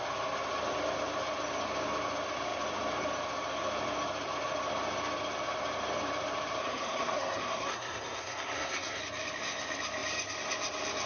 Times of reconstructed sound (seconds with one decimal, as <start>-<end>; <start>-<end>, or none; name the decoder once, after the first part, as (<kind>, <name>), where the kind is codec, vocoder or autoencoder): 6.6-9.0 (codec, SNAC)